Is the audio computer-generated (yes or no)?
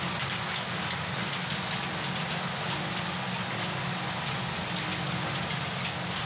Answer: no